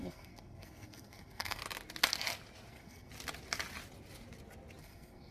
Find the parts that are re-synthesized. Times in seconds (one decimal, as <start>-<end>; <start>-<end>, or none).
0.0-1.6; 2.7-3.1; 4.8-5.3